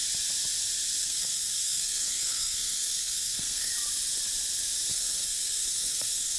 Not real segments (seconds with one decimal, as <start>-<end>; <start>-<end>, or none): 1.0-3.7; 4.9-6.4

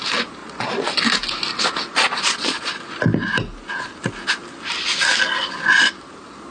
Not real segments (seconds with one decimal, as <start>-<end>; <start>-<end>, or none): 0.4-1.0; 1.9-2.8

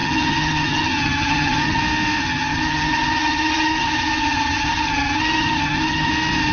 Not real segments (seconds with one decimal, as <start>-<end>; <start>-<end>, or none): 0.0-1.8; 2.2-6.1

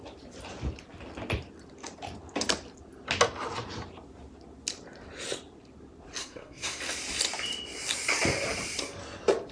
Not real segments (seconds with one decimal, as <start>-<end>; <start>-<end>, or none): 6.2-6.8

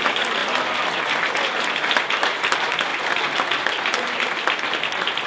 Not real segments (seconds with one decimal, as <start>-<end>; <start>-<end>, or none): none

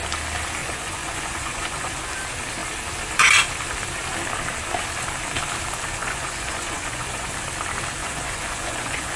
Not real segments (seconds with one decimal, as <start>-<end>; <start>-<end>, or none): 0.6-2.1; 6.0-7.3; 8.0-9.2